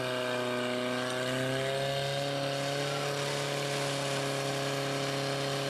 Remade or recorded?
recorded